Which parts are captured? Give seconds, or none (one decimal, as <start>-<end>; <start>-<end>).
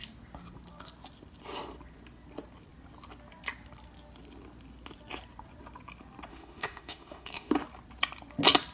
0.0-6.3; 7.5-8.7